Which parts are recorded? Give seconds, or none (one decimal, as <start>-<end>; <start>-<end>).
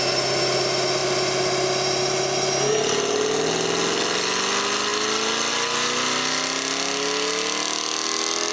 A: 0.0-8.5